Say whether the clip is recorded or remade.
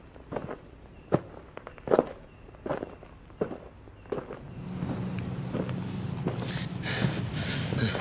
recorded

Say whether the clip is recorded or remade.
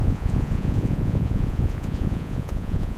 remade